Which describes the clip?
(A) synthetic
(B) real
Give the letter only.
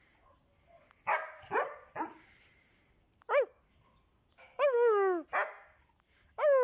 B